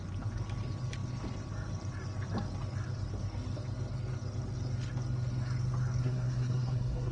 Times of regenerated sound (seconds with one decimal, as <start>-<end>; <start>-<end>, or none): 6.0-7.1